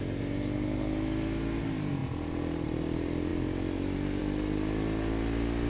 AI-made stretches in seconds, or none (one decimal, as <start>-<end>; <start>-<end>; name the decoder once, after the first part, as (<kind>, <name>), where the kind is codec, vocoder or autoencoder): none